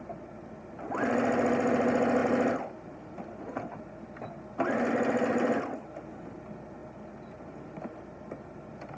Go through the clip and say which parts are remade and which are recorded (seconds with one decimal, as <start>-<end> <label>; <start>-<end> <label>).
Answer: 0.0-9.0 recorded